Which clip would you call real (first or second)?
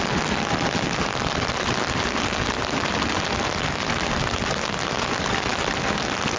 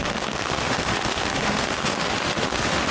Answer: first